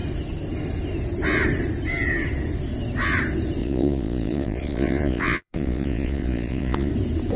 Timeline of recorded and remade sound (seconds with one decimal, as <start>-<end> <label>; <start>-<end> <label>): 0.0-3.6 recorded; 3.6-6.9 remade; 6.9-7.4 recorded